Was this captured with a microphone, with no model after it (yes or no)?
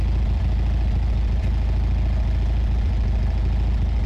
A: yes